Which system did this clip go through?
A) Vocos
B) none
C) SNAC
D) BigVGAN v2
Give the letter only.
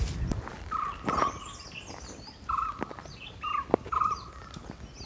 B